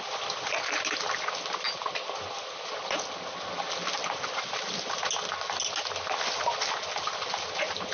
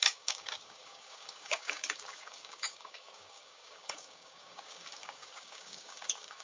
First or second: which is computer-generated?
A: second